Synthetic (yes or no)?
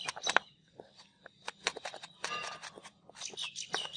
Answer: no